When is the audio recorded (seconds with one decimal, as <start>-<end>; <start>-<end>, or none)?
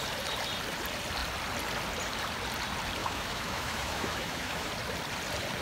0.0-3.0; 4.7-5.6